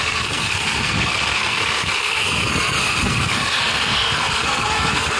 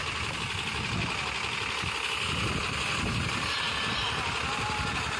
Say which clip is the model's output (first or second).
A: first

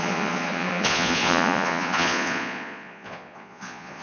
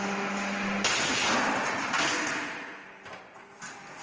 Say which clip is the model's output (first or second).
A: first